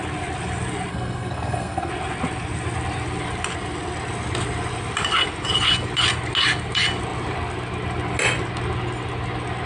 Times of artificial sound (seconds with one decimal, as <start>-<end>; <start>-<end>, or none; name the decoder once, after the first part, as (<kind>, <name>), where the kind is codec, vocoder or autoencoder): 0.9-1.9 (codec, SNAC)